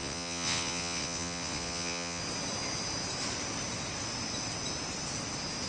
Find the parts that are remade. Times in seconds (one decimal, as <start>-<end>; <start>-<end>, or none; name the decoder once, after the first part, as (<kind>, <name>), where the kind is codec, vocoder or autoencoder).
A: 0.0-2.2 (vocoder, WaveNeXt)